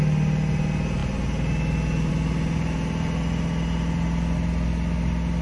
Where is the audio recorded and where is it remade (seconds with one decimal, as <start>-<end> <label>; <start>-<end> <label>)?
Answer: 0.0-5.4 recorded